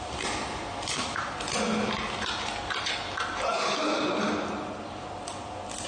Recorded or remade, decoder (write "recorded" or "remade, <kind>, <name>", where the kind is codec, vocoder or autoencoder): recorded